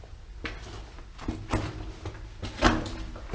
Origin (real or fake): real